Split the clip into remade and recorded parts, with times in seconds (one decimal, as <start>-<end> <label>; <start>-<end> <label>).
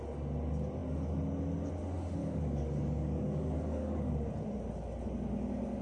0.0-2.2 recorded; 2.2-4.1 remade; 4.1-5.8 recorded